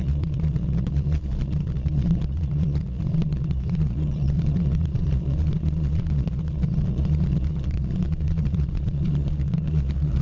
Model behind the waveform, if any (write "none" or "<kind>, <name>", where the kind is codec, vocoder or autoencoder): vocoder, Vocos